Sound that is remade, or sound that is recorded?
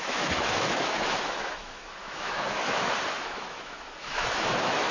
remade